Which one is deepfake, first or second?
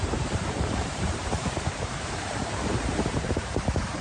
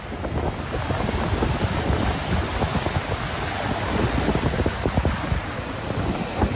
first